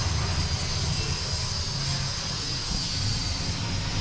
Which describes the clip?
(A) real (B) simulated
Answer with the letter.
A